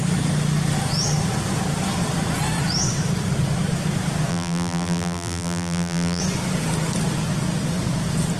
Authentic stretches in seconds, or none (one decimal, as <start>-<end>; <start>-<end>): 0.0-4.3; 6.2-8.4